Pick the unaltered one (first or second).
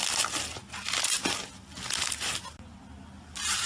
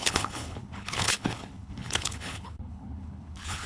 first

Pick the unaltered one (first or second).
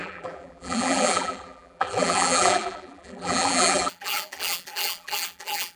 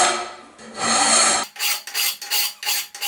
second